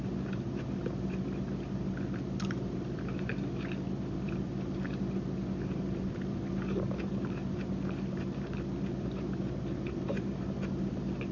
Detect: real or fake fake